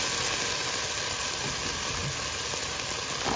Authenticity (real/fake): real